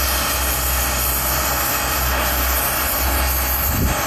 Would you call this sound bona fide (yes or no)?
yes